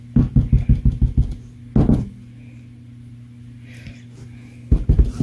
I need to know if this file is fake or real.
real